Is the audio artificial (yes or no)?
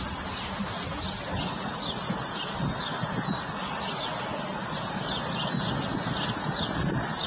no